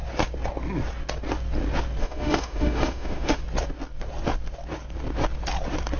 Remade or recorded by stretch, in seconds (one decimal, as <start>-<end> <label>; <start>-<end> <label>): 0.0-2.0 recorded; 2.0-3.4 remade; 3.4-6.0 recorded

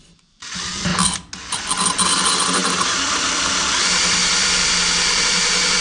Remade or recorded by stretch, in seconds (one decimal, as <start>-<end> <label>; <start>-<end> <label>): 0.0-0.9 remade; 0.9-2.1 recorded; 2.1-2.6 remade; 2.6-3.2 recorded; 3.2-5.8 remade

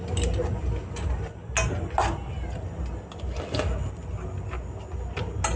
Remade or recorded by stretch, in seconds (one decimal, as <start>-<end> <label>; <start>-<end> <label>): 0.0-5.6 recorded

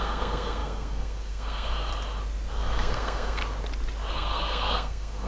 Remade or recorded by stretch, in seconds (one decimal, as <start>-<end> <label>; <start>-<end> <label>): 0.0-1.9 remade; 1.9-2.5 recorded; 2.5-3.4 remade; 3.4-4.1 recorded; 4.1-5.3 remade